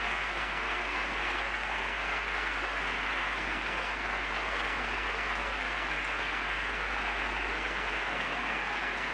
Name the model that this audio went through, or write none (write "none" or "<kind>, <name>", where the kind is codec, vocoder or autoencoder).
codec, SNAC